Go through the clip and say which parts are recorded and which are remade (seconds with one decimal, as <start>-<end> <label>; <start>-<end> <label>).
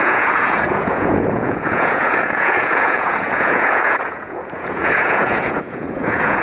0.0-6.4 remade